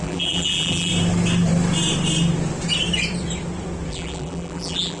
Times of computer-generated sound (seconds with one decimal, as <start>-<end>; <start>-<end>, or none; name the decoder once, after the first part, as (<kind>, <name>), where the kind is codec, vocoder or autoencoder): 0.0-0.9 (vocoder, BigVGAN v2); 3.9-5.0